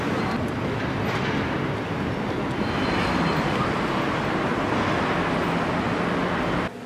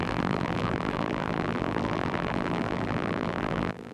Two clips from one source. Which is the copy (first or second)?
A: second